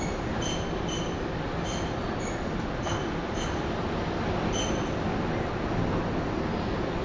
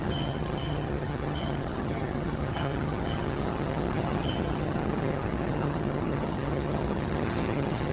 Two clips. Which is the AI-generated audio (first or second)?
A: second